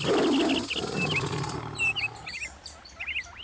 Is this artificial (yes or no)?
no